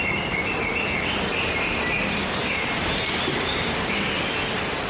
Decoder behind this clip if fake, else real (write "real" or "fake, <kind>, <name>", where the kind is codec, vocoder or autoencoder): real